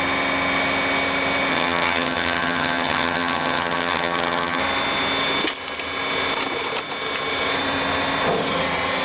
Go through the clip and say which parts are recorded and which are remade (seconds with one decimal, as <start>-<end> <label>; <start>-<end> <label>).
0.0-1.5 recorded; 1.5-4.6 remade; 4.6-9.0 recorded